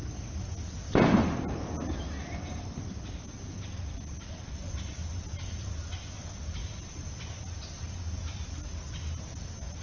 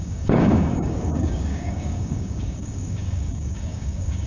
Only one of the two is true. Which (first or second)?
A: first